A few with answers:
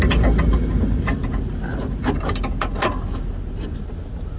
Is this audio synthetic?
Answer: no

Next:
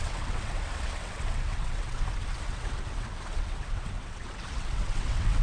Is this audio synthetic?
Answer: yes